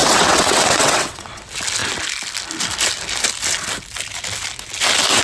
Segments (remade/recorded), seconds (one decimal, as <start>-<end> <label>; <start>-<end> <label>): 0.0-1.4 remade; 1.4-5.2 recorded